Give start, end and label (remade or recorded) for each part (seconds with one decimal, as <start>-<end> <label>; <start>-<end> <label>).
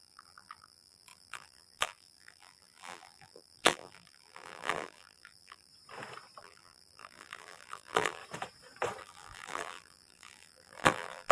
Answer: 0.0-5.7 remade; 5.7-6.4 recorded; 6.4-8.2 remade; 8.2-9.0 recorded; 9.0-11.3 remade